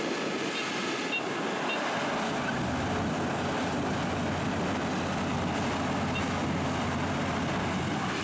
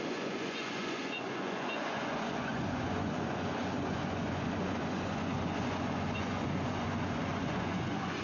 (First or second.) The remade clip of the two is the second